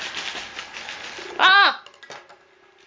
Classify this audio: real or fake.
real